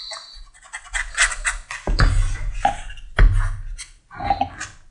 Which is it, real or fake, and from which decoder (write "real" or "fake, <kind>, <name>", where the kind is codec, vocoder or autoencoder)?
real